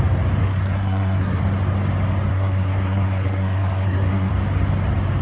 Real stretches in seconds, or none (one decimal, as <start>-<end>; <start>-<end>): 0.0-0.4; 1.4-2.3; 4.3-5.2